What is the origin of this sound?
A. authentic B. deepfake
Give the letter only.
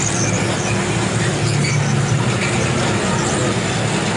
A